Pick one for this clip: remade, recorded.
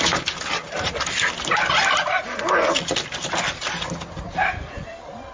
recorded